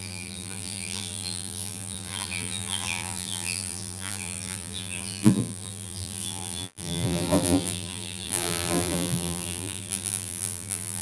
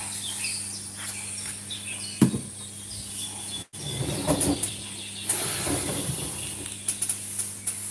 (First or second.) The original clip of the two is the second